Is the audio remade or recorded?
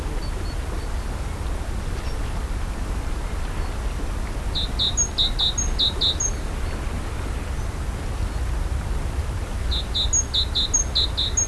recorded